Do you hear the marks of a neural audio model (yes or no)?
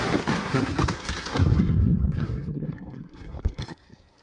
yes